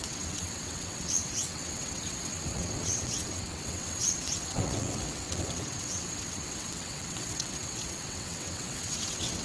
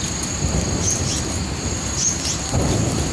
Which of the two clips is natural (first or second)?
second